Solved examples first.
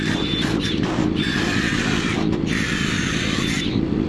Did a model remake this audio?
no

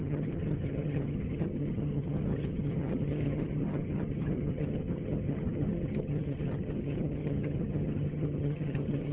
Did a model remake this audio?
yes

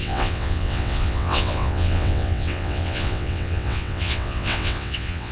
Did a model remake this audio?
yes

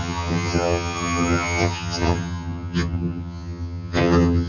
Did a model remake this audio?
yes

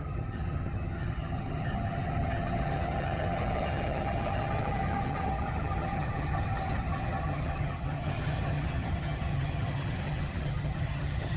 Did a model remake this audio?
yes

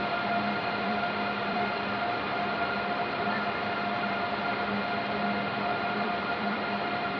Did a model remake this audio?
yes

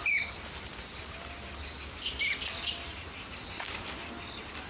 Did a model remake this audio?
no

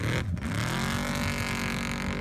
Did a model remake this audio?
no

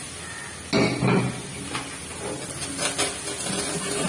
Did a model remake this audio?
no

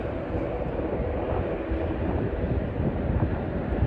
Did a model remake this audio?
no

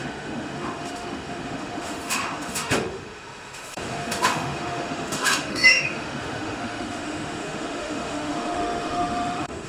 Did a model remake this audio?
yes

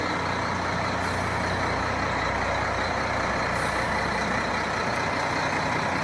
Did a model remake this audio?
no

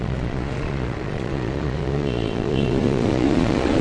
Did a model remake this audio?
yes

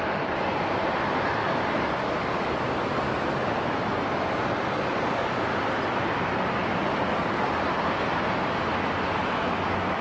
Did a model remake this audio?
no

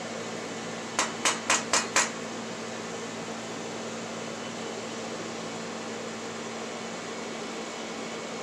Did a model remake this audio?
no